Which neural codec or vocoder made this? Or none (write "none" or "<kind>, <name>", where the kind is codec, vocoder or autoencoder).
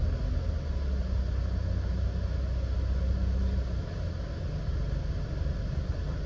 none